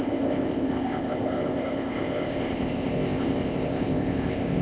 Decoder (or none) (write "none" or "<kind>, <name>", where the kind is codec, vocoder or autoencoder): codec, ZipCodec